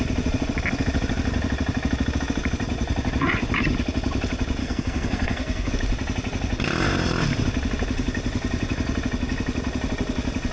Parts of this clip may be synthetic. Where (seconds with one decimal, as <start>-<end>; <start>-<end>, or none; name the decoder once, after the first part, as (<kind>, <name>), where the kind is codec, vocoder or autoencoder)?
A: 4.6-5.7 (codec, SNAC)